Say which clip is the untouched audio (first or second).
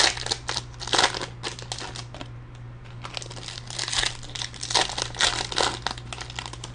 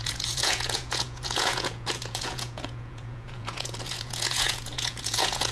first